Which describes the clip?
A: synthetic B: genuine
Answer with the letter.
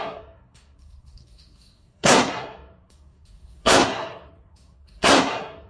A